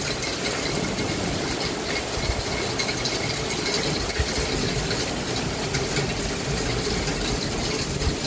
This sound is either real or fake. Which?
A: real